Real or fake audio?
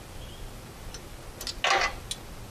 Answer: real